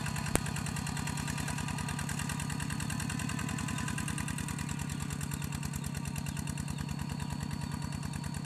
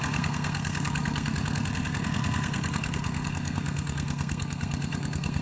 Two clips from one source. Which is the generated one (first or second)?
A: second